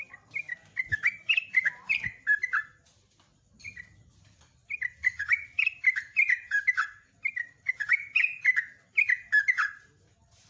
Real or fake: real